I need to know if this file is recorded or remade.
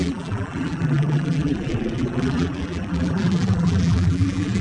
remade